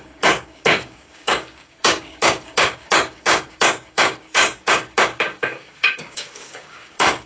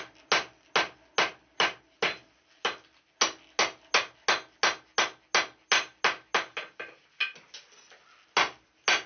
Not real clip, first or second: first